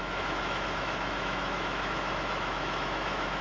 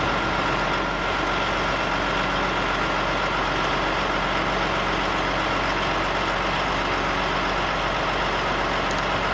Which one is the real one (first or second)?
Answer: second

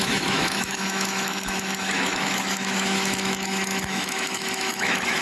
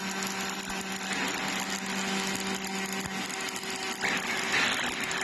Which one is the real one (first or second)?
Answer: second